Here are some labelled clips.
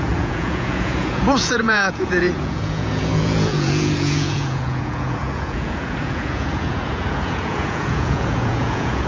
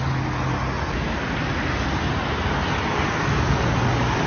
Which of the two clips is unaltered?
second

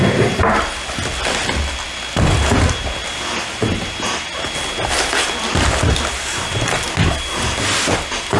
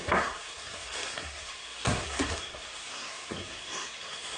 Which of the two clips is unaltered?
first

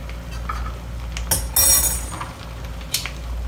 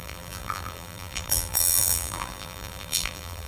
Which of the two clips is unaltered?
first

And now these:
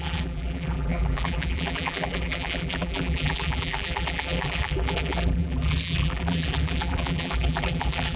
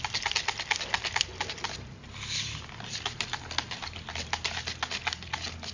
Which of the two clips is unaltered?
second